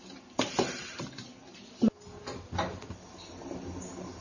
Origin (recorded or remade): recorded